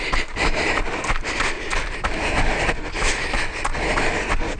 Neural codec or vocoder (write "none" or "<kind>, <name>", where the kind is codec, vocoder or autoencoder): none